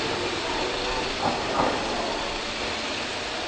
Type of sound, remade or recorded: recorded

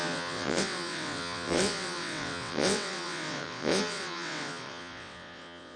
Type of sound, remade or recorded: remade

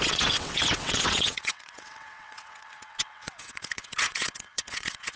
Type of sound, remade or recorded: remade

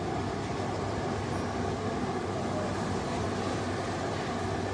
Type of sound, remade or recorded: recorded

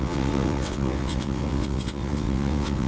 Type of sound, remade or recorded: remade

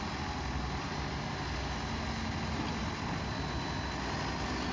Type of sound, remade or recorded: recorded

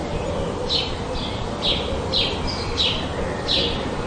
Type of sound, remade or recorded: recorded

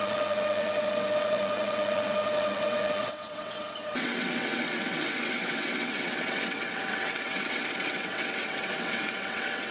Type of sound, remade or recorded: remade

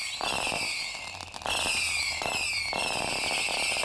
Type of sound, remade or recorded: recorded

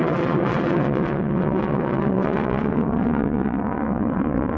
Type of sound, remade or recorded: remade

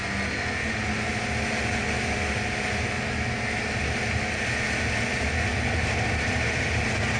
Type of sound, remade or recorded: recorded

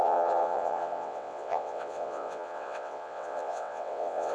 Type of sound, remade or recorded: remade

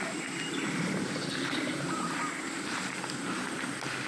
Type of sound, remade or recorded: recorded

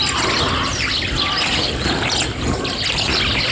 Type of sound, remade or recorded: recorded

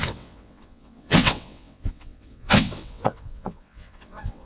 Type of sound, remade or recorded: remade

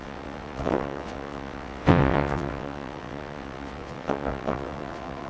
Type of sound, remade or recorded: remade